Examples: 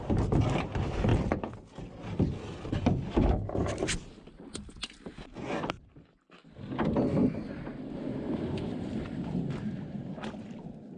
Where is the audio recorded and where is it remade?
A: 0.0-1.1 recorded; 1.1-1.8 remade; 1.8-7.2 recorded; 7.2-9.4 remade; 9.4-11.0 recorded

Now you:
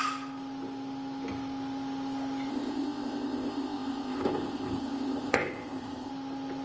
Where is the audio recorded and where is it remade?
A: 0.0-2.5 recorded; 2.5-6.1 remade; 6.1-6.6 recorded

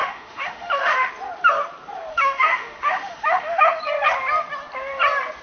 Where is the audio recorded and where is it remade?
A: 0.0-1.1 remade; 1.1-2.1 recorded; 2.1-3.8 remade; 3.8-5.4 recorded

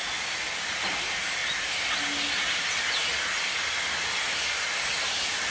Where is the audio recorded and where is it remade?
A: 0.0-5.5 recorded

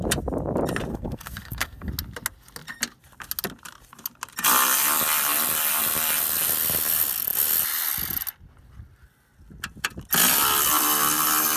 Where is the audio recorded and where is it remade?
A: 0.0-0.9 recorded; 0.9-1.9 remade; 1.9-11.6 recorded

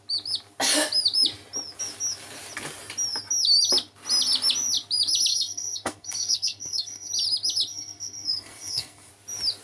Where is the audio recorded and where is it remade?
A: 0.0-5.3 recorded; 5.3-7.1 remade; 7.1-7.7 recorded; 7.7-9.1 remade; 9.1-9.6 recorded

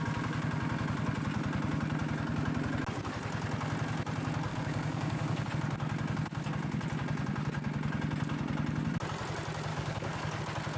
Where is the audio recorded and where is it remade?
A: 0.0-4.5 recorded; 4.5-5.5 remade; 5.5-9.7 recorded; 9.7-10.4 remade; 10.4-10.8 recorded